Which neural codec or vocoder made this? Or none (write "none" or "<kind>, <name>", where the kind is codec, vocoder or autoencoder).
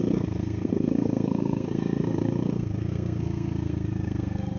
codec, SNAC